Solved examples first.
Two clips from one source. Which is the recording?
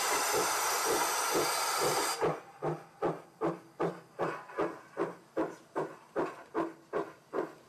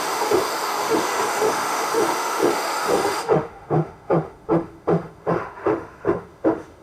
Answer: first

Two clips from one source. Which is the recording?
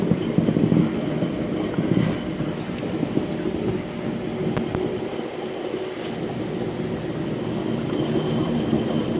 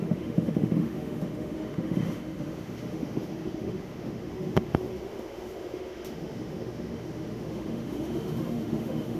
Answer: first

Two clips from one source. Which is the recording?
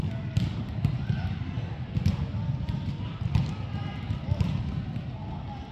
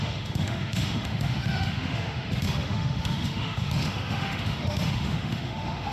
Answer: first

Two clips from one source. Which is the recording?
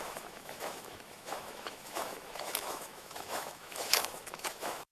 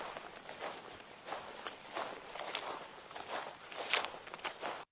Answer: second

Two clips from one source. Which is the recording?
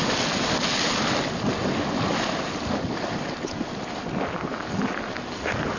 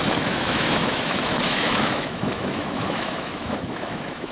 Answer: first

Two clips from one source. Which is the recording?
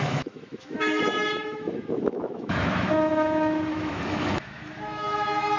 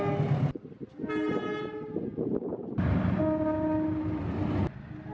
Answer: second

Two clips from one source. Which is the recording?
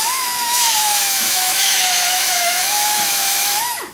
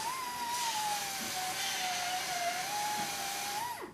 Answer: second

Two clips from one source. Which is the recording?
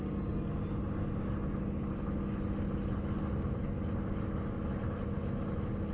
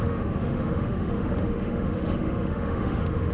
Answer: first